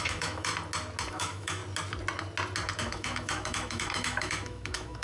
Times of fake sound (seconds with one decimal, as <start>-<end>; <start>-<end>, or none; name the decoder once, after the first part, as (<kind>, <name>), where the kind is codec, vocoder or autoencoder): 0.0-0.5 (autoencoder, DAC-VAE); 1.1-1.6; 2.8-5.0